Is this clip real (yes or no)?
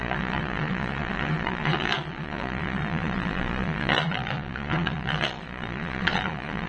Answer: no